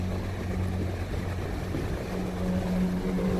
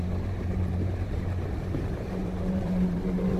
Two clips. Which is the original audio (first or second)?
first